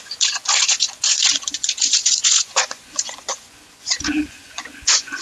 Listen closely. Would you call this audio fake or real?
fake